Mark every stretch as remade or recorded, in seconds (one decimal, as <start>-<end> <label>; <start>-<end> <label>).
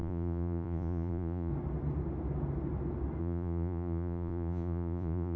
0.0-1.5 remade; 1.5-3.2 recorded; 3.2-5.4 remade